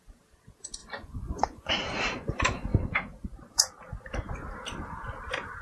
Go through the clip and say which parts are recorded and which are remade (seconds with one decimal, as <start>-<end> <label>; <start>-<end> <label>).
0.0-0.8 recorded; 0.8-1.7 remade; 1.7-5.6 recorded